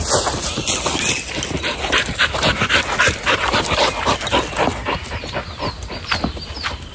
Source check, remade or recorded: recorded